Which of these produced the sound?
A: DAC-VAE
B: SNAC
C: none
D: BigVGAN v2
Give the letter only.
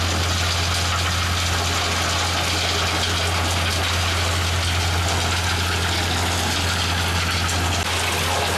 C